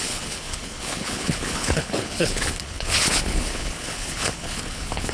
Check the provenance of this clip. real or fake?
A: fake